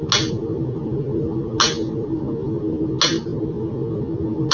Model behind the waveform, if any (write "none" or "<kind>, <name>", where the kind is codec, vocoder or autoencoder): none